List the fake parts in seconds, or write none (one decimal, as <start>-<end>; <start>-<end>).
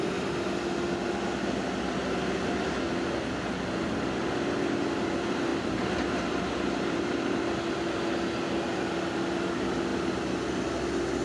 5.5-7.4